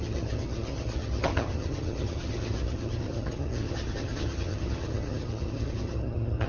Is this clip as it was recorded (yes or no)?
no